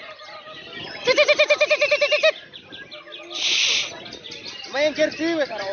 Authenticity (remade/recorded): recorded